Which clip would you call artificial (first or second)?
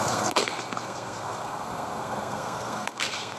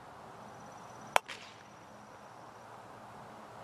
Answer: first